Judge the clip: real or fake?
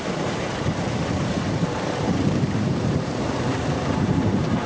fake